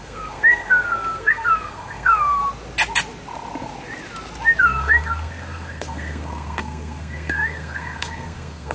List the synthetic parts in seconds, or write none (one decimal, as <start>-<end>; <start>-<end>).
0.0-2.4; 4.6-8.7